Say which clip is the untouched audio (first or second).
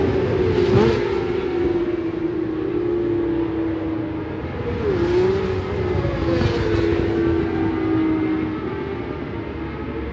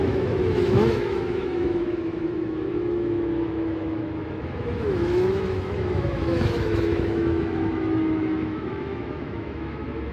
first